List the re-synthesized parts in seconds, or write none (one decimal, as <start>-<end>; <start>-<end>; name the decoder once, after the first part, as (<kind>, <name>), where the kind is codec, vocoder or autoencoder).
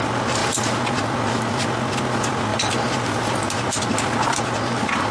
none